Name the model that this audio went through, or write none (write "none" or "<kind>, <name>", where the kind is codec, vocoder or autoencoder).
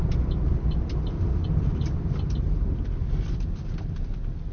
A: none